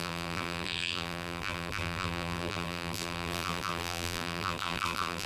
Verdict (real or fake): fake